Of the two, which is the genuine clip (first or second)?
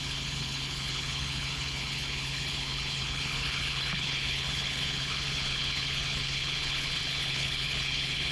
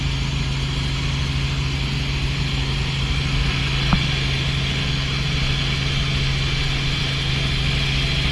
second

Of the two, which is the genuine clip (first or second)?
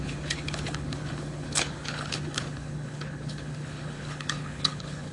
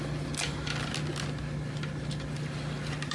second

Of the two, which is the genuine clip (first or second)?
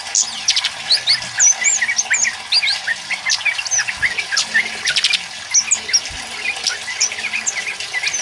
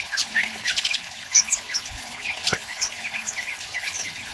first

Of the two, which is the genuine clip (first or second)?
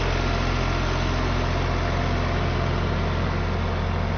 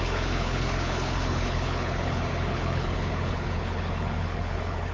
first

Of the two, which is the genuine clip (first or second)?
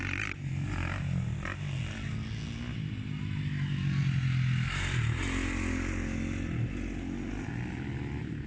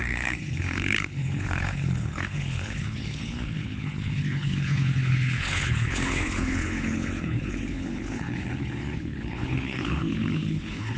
first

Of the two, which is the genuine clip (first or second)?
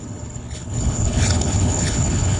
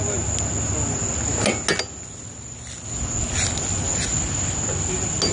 second